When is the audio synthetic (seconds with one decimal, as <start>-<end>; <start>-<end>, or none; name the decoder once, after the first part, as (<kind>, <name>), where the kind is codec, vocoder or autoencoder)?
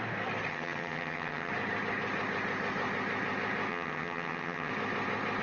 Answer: 0.5-1.5 (vocoder, HiFi-GAN); 3.7-4.7